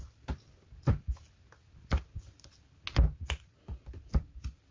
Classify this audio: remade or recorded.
recorded